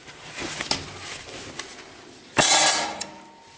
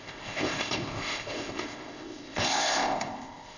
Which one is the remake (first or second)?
second